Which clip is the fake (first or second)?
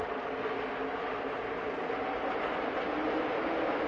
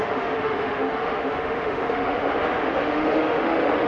second